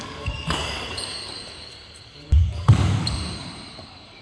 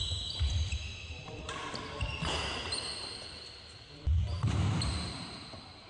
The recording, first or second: second